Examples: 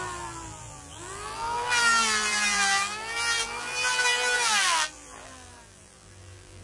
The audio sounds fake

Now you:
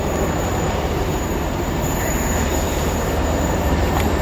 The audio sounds fake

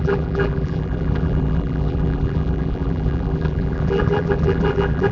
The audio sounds fake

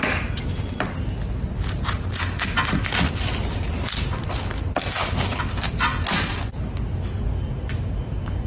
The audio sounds real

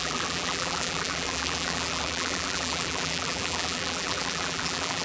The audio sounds fake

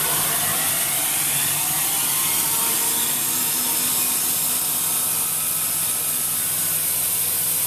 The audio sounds real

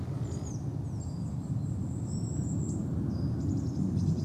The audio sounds real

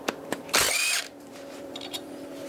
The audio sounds fake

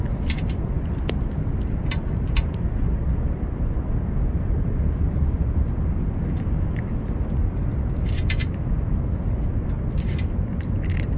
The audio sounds fake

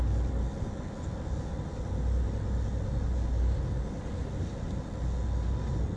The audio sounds real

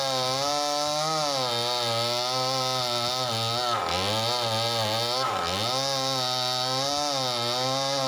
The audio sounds real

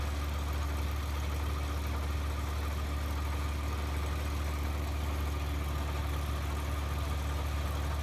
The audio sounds real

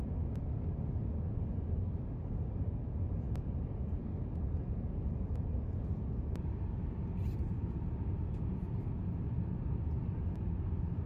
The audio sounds real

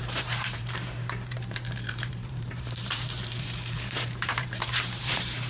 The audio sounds fake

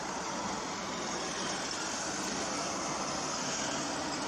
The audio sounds real